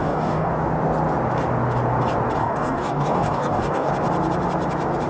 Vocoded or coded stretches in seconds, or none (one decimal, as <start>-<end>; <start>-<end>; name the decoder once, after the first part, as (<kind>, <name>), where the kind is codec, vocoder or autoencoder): 0.0-0.5 (codec, DAC); 2.4-3.9